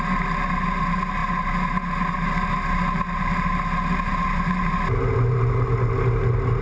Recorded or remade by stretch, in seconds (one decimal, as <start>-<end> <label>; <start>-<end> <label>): 0.0-6.6 recorded